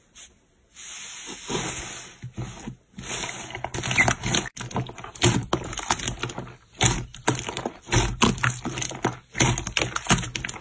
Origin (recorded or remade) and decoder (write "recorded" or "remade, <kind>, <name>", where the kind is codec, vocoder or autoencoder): recorded